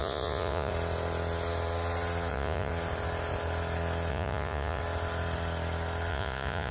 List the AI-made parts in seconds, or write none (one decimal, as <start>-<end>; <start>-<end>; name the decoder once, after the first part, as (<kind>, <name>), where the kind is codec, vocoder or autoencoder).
0.0-0.7 (vocoder, Vocos); 2.3-2.7; 4.1-4.8; 6.1-6.7